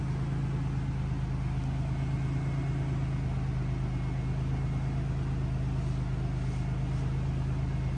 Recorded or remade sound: recorded